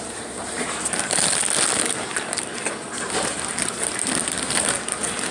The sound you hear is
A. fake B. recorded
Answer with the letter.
B